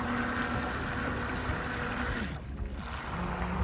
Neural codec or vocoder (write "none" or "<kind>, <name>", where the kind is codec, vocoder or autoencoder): none